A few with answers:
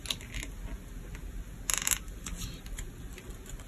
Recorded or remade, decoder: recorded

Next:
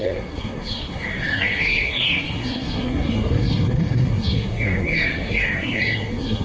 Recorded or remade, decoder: remade, codec, SNAC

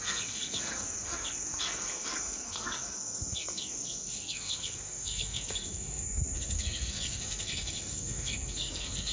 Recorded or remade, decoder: remade, codec, SNAC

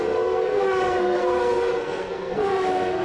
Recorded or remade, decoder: remade, codec, SNAC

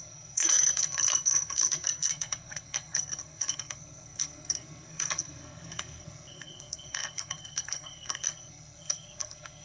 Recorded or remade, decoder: remade, codec, SNAC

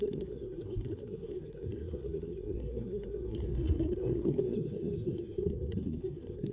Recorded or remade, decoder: remade, codec, SNAC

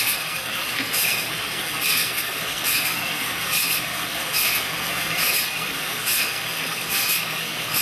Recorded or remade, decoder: remade, codec, SNAC